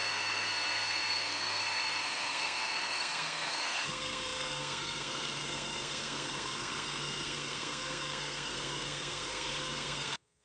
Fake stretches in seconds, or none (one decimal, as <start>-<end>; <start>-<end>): 0.0-10.4